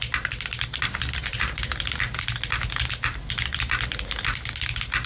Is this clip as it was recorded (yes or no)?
yes